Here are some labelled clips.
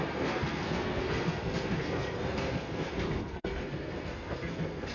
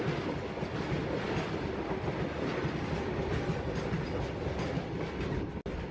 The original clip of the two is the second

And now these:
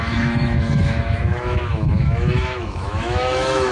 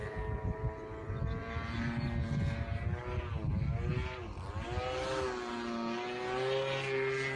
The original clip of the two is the second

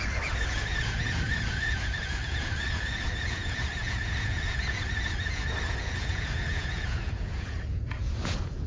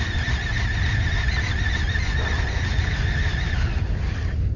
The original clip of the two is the second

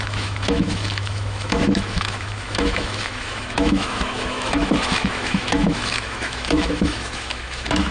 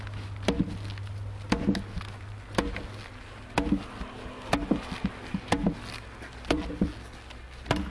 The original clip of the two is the second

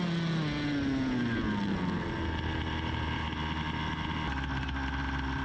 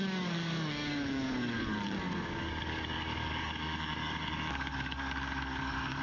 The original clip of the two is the first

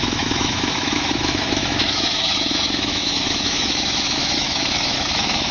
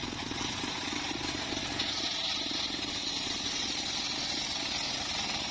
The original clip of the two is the second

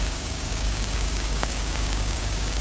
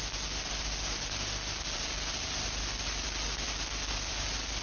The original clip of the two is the second